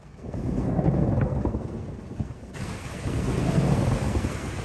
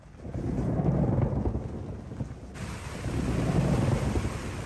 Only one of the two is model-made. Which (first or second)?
first